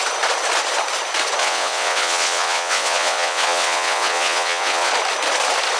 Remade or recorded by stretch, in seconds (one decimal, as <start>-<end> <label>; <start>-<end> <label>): 0.0-1.4 recorded; 1.4-4.9 remade; 4.9-5.8 recorded